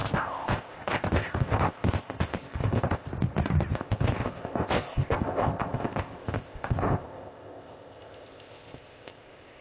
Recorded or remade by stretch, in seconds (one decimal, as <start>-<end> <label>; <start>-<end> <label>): 0.0-3.1 remade; 3.1-3.7 recorded; 3.7-9.6 remade